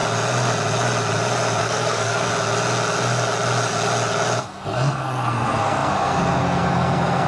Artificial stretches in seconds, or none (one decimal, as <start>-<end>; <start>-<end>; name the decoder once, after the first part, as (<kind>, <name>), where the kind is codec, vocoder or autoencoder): 1.6-2.3 (codec, SNAC); 4.4-7.3